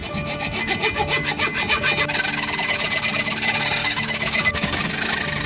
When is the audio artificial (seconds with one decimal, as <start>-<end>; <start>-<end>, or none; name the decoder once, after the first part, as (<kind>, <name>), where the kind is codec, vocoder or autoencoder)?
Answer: 3.8-4.8 (codec, DAC)